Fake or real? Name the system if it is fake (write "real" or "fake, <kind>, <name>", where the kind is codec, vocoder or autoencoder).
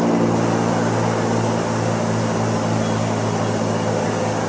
real